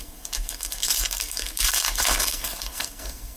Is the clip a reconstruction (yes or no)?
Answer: yes